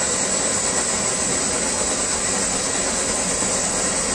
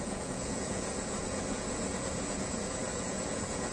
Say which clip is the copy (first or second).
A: second